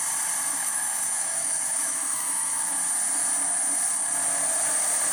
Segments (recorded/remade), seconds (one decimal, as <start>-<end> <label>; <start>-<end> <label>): 0.0-0.5 recorded; 0.5-2.7 remade; 2.7-5.1 recorded